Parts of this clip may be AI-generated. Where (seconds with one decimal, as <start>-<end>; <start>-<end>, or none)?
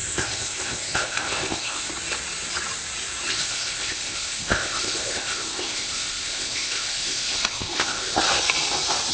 0.0-1.9; 3.3-8.2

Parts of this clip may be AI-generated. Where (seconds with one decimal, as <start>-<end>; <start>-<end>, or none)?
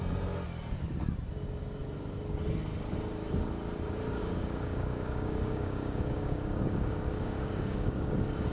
4.2-8.1